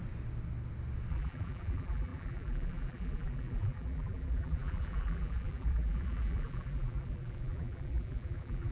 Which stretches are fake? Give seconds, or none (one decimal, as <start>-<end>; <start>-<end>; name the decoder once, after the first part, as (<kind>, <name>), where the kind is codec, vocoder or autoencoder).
1.1-8.7 (vocoder, BigVGAN v2)